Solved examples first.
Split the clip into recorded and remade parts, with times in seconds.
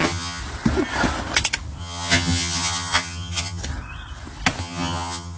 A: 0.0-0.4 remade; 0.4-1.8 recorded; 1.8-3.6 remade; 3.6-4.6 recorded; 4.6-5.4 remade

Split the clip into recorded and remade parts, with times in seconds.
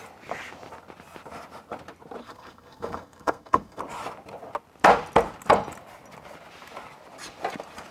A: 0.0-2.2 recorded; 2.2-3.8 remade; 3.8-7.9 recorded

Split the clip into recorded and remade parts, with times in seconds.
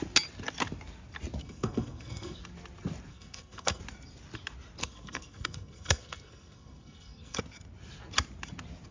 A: 0.0-1.4 recorded; 1.4-2.4 remade; 2.4-3.1 recorded; 3.1-3.8 remade; 3.8-4.8 recorded; 4.8-7.4 remade; 7.4-8.9 recorded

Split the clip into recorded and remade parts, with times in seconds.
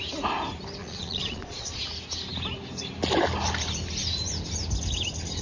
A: 0.0-0.8 recorded; 0.8-1.8 remade; 1.8-5.4 recorded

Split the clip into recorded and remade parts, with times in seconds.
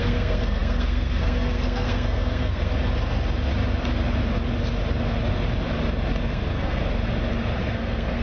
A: 0.0-2.7 remade; 2.7-6.3 recorded; 6.3-6.8 remade; 6.8-7.6 recorded; 7.6-8.2 remade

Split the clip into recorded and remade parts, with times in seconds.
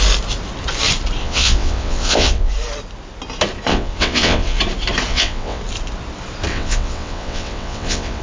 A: 0.0-1.2 recorded; 1.2-2.5 remade; 2.5-3.7 recorded; 3.7-4.6 remade; 4.6-5.1 recorded; 5.1-5.6 remade; 5.6-6.5 recorded; 6.5-8.2 remade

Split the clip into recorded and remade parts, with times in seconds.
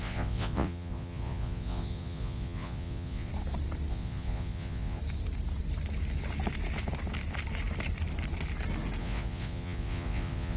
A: 0.0-3.3 remade; 3.3-3.9 recorded; 3.9-5.0 remade; 5.0-9.0 recorded; 9.0-10.6 remade